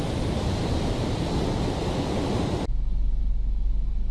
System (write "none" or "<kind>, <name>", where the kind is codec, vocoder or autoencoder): none